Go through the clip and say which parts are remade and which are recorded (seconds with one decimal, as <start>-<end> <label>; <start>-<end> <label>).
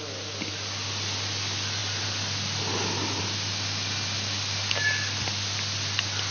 0.0-6.3 recorded